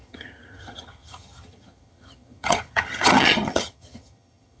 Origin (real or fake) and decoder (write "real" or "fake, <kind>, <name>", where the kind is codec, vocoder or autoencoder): fake, vocoder, HiFi-GAN